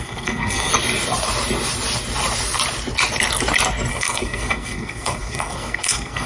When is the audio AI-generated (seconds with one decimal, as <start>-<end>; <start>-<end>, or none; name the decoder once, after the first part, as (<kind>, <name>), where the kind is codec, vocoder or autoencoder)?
0.0-0.7 (codec, SNAC); 3.9-6.3